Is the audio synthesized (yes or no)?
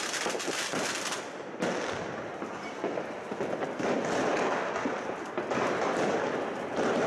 no